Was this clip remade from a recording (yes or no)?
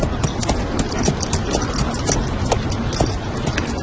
no